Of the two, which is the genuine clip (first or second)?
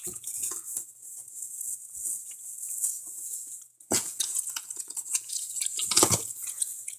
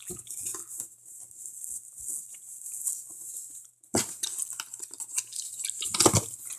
second